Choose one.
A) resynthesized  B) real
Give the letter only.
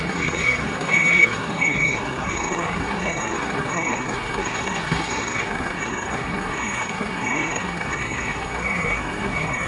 A